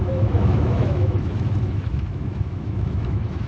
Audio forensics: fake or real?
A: fake